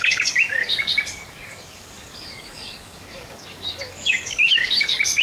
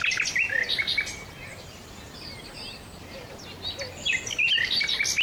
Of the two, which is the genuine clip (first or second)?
second